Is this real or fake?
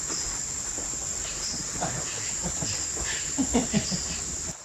real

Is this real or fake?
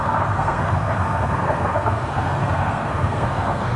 fake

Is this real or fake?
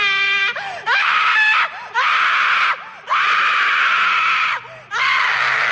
real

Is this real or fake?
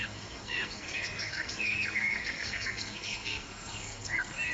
fake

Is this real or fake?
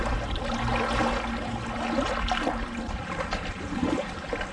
real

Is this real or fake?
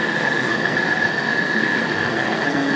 fake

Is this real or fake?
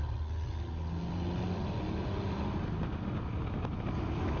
real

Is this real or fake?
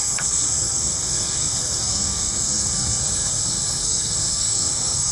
fake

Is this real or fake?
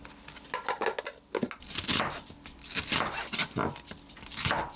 real